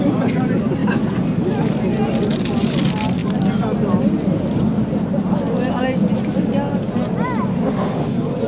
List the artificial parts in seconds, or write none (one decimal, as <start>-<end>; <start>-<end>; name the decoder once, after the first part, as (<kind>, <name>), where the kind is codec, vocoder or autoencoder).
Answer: 7.5-8.1 (autoencoder, DAC-VAE)